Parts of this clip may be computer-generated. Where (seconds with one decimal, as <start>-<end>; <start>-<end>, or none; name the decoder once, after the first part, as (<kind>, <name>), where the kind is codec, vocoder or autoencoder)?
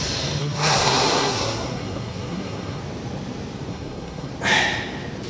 0.4-2.8 (codec, SNAC); 3.7-4.3